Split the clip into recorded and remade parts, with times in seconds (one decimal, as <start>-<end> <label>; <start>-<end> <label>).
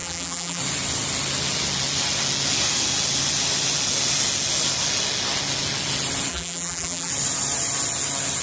0.0-0.6 remade; 0.6-6.3 recorded; 6.3-7.1 remade; 7.1-8.4 recorded